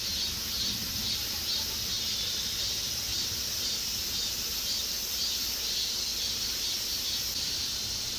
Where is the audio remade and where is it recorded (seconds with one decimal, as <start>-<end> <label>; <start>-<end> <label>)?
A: 0.0-0.8 recorded; 0.8-1.7 remade; 1.7-3.1 recorded; 3.1-5.6 remade; 5.6-6.1 recorded; 6.1-7.6 remade; 7.6-8.2 recorded